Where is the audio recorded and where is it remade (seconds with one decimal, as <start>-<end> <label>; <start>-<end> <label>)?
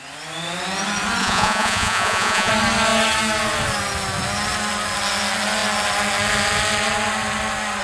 0.0-1.2 recorded; 1.2-2.5 remade; 2.5-7.8 recorded